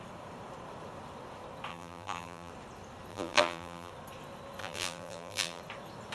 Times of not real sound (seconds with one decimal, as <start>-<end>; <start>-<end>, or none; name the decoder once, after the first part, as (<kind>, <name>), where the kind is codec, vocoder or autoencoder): 1.7-2.5 (vocoder, BigVGAN v2); 3.1-3.9; 4.6-5.6